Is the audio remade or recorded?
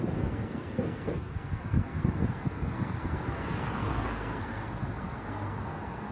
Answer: remade